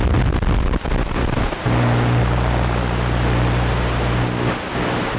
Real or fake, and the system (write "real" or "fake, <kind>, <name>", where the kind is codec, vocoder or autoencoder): real